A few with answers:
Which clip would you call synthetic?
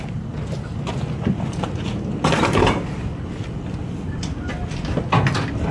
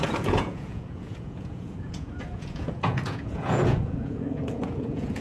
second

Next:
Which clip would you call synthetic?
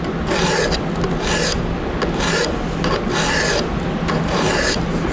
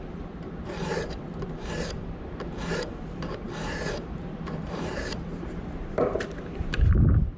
second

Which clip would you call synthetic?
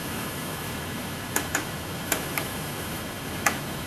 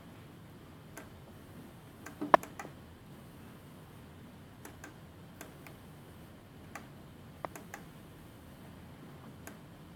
first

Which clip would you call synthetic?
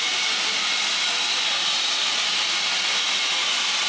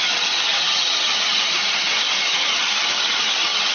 second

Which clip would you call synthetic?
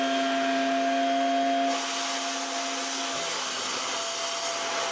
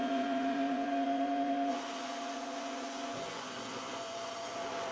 second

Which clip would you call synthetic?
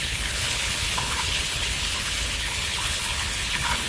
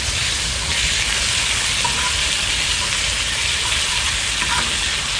first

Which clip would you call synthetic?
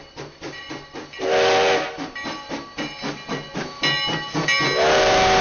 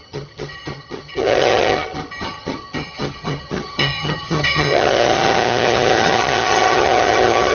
second